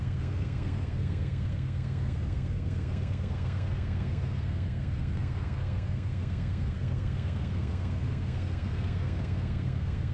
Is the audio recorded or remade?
remade